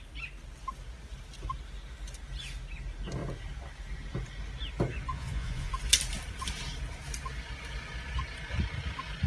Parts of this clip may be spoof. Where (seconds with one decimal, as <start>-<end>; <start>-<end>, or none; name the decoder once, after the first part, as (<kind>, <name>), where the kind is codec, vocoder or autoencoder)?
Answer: 5.1-5.7 (vocoder, Vocos)